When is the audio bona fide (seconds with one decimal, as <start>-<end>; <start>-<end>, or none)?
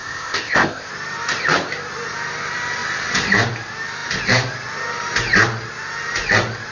0.9-6.7